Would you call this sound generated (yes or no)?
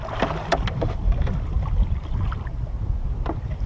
no